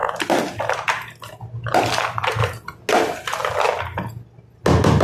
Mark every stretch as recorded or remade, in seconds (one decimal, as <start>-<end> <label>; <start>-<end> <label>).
0.0-5.0 recorded